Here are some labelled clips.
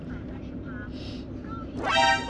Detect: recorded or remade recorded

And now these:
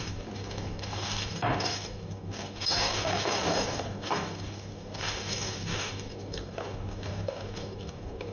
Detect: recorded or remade remade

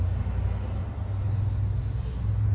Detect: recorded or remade recorded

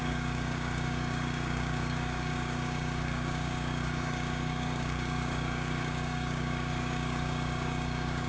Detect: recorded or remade remade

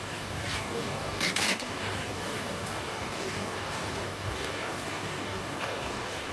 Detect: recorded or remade remade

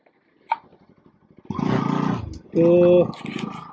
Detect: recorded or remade recorded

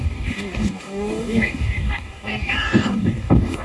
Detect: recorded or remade remade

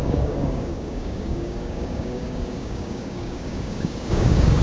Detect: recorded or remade remade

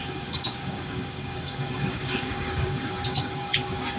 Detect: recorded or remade remade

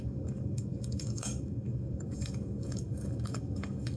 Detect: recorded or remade remade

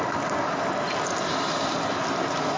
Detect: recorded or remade recorded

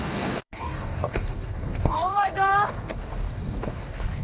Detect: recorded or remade remade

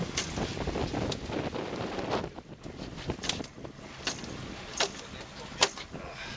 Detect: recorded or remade recorded